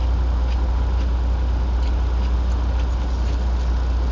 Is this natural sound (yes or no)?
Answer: yes